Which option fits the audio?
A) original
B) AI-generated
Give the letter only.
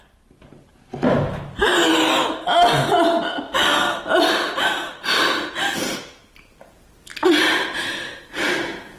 A